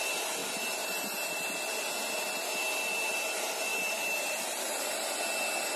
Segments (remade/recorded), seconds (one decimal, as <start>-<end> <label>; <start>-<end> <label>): 0.0-0.4 recorded; 0.4-1.3 remade; 1.3-3.7 recorded; 3.7-5.1 remade; 5.1-5.8 recorded